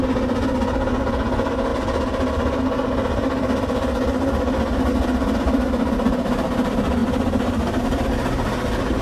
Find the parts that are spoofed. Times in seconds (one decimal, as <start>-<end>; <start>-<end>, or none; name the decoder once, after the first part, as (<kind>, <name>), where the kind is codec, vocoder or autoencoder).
none